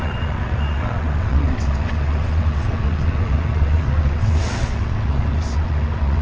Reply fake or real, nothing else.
fake